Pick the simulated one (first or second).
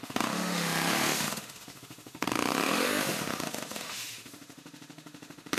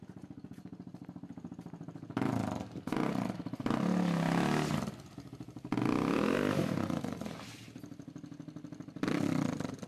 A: first